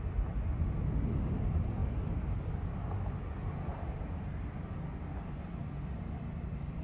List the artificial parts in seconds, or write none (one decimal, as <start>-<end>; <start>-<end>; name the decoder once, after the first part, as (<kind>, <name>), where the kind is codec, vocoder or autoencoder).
3.7-4.3 (vocoder, BigVGAN v2)